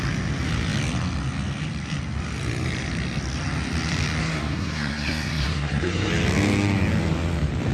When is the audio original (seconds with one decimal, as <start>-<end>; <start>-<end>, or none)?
0.0-4.2; 6.1-7.7